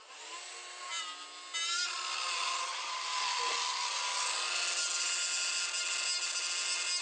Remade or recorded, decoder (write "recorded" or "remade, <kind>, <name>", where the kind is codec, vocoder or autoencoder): recorded